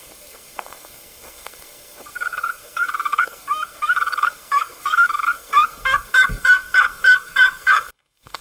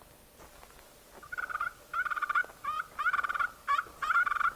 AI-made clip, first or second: first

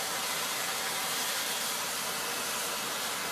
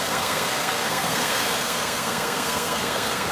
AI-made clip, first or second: second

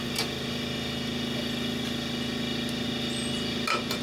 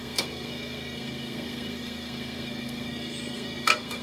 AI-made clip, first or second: second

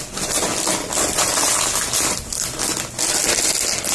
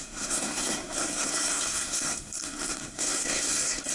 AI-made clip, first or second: second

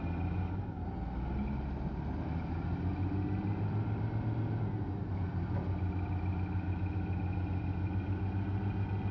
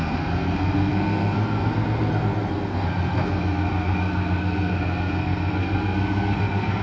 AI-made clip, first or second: second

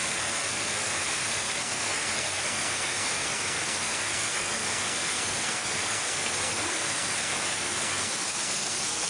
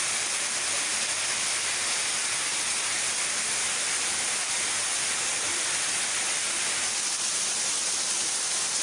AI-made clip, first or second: first